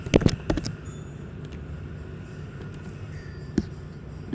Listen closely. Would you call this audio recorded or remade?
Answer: recorded